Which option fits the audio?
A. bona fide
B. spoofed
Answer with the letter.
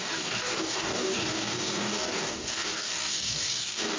B